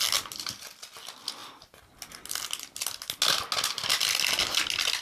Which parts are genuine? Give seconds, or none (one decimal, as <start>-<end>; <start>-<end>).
0.0-5.0